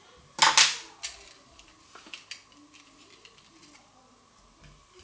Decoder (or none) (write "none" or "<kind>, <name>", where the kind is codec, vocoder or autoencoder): none